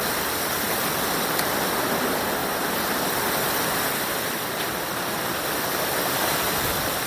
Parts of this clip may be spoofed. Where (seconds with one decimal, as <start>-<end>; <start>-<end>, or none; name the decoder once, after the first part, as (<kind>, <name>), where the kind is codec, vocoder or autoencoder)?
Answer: none